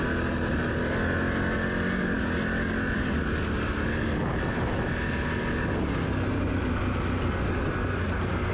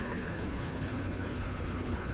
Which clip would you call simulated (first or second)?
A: second